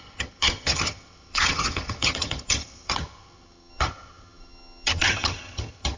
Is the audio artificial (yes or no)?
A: yes